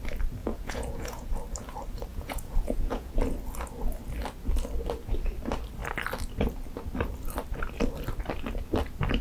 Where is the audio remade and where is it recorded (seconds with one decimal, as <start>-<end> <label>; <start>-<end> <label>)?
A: 0.0-0.4 recorded; 0.4-1.3 remade; 1.3-2.1 recorded; 2.1-3.1 remade; 3.1-9.2 recorded